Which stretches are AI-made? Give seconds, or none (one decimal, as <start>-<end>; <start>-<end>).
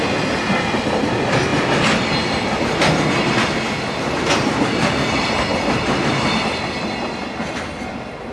none